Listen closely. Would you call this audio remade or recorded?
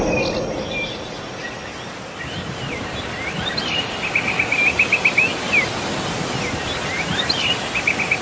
recorded